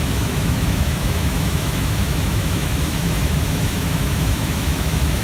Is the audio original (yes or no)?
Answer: no